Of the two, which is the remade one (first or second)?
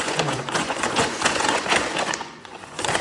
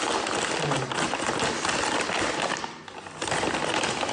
first